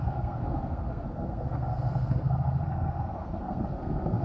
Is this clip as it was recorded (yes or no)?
no